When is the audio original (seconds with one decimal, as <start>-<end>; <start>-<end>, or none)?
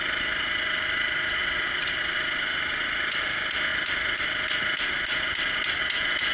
0.0-6.3